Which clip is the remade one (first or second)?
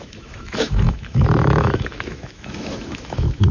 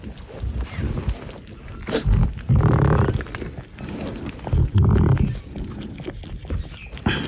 first